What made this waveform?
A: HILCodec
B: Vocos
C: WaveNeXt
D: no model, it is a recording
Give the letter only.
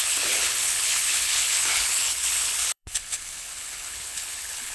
A